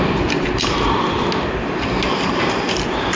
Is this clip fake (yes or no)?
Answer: no